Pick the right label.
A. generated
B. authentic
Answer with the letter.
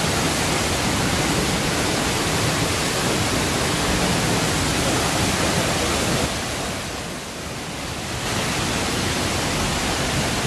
B